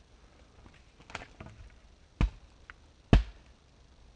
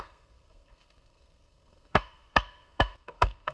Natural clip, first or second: first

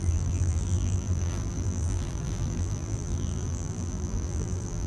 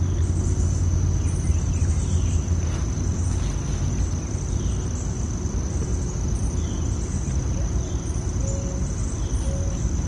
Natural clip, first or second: second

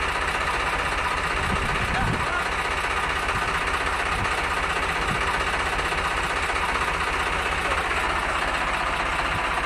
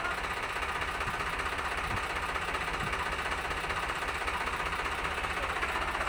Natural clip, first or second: first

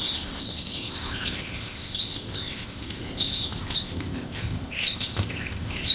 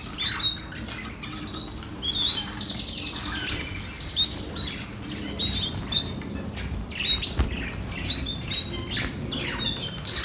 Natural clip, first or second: second